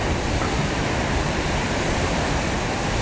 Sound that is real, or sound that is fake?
real